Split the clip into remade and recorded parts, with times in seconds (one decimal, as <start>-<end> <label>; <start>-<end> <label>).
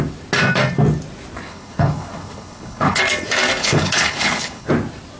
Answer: 0.0-1.5 recorded; 1.5-3.0 remade; 3.0-3.6 recorded; 3.6-4.7 remade; 4.7-5.2 recorded